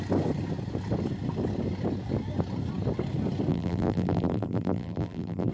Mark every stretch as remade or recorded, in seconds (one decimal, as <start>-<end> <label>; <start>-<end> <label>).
0.0-3.5 recorded; 3.5-5.5 remade